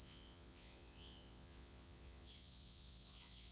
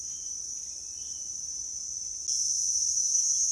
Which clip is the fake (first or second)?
first